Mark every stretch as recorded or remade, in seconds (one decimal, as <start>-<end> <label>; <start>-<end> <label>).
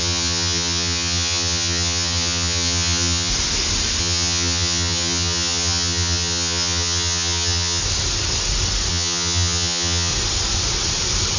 0.0-3.3 remade; 3.3-4.0 recorded; 4.0-7.8 remade; 7.8-8.9 recorded; 8.9-10.1 remade; 10.1-11.4 recorded